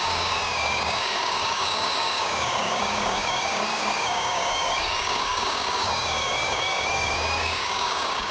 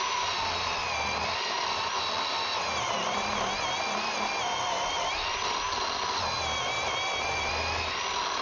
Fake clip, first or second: first